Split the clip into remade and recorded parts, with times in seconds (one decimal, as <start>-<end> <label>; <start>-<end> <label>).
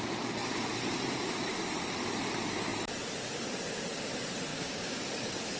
0.0-4.5 recorded; 4.5-5.1 remade; 5.1-5.6 recorded